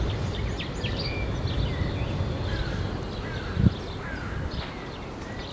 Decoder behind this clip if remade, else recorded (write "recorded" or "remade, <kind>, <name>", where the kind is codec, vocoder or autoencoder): recorded